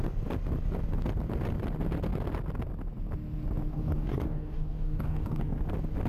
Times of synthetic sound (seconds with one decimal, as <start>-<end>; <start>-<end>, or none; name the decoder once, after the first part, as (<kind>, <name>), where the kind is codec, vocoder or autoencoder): 3.7-5.6 (codec, DAC)